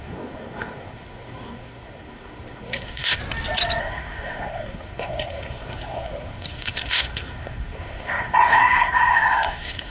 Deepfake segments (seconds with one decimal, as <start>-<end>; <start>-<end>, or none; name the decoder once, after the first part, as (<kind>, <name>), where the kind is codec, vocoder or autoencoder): 0.0-3.2 (codec, SNAC); 3.8-9.9